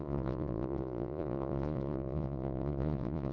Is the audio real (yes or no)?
no